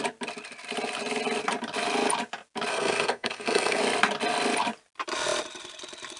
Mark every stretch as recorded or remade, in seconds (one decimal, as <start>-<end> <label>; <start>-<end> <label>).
0.0-2.7 recorded; 2.7-3.8 remade; 3.8-6.2 recorded